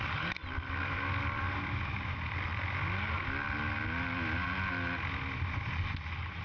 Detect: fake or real real